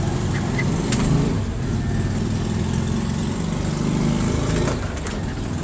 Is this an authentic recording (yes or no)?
yes